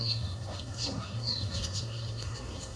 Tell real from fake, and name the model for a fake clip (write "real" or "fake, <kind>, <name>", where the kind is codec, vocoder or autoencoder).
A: fake, codec, SNAC